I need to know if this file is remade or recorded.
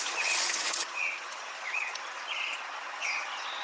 remade